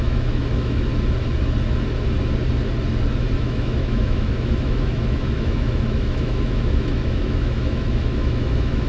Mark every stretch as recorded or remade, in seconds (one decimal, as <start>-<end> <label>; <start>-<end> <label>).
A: 0.0-0.9 remade; 0.9-3.4 recorded; 3.4-8.9 remade